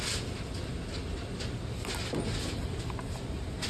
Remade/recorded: recorded